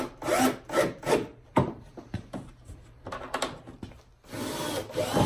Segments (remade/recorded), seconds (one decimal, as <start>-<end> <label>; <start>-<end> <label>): 0.0-1.3 recorded; 1.3-3.2 remade; 3.2-5.3 recorded